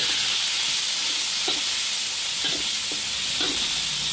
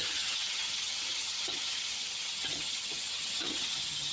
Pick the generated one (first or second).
second